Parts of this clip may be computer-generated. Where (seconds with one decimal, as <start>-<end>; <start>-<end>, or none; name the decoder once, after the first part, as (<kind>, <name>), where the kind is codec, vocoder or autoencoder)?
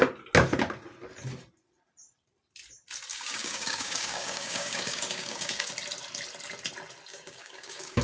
3.1-5.7 (codec, DAC); 7.1-8.0